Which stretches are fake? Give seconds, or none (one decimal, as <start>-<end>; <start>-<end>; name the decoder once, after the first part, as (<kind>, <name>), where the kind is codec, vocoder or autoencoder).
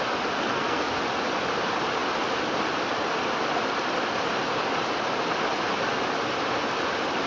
0.5-1.0 (codec, SNAC)